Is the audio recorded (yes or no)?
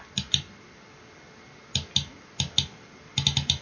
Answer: yes